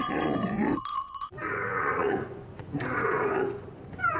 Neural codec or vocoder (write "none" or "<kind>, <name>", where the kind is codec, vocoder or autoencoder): vocoder, Vocos